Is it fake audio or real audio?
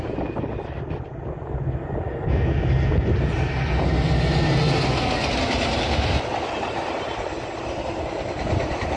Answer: real